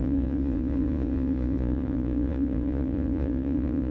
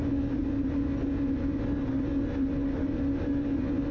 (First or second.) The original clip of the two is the second